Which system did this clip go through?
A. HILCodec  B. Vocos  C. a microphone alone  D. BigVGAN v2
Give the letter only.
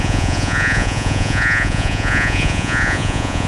B